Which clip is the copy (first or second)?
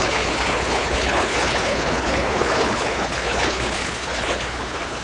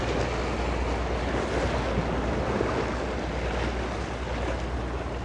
first